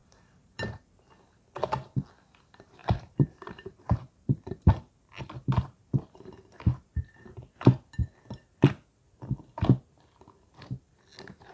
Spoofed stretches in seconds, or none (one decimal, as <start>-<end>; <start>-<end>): 0.0-0.8; 2.8-6.3